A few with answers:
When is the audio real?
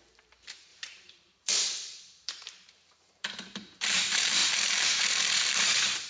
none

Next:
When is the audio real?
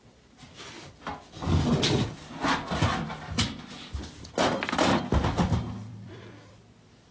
1.1-5.1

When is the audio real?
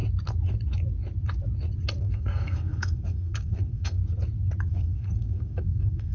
0.0-2.0; 4.0-4.7